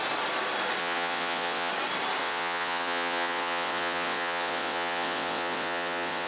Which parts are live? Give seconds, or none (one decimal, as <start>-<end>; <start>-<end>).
0.0-0.8; 1.7-2.2